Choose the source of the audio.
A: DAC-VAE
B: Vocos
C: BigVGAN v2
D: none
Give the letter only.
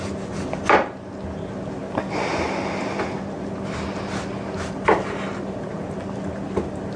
D